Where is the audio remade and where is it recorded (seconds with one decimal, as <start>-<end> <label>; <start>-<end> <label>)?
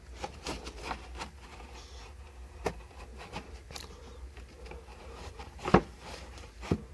0.0-3.1 recorded; 3.1-4.2 remade; 4.2-4.9 recorded; 4.9-6.5 remade; 6.5-6.9 recorded